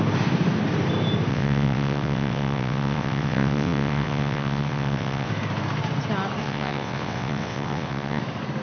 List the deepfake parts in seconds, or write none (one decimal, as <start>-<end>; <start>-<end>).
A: 1.3-5.3; 6.4-8.2